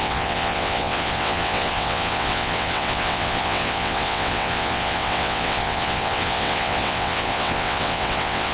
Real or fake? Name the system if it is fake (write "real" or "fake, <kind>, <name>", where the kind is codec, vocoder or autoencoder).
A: fake, vocoder, WaveNeXt